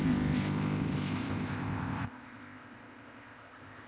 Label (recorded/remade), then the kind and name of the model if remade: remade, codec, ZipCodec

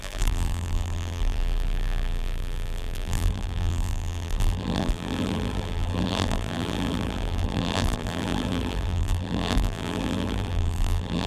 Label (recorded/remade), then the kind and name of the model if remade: remade, vocoder, BigVGAN v2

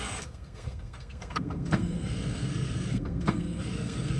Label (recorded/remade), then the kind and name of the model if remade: remade, codec, SNAC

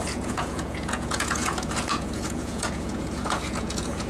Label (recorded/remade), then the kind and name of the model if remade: remade, vocoder, Vocos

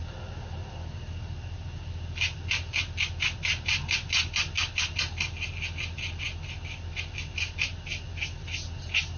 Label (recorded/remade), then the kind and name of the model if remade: recorded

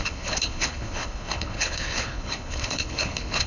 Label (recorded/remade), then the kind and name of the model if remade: remade, codec, HILCodec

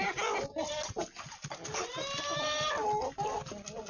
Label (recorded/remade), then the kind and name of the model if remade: recorded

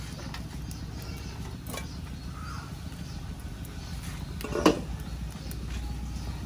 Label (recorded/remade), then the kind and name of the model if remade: recorded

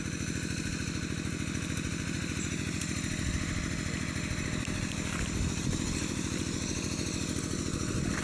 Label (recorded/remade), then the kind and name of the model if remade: recorded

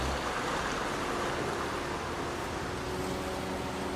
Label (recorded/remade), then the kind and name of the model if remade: recorded